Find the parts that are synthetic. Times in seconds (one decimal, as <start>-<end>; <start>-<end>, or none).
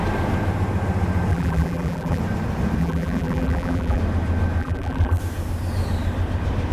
1.3-2.2; 2.8-4.0; 4.6-5.2